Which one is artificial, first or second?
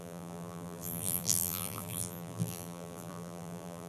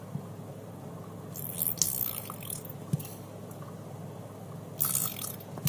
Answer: first